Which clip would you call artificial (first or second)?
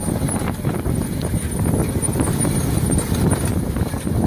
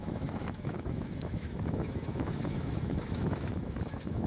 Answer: second